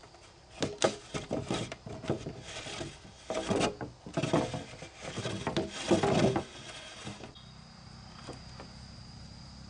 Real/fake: real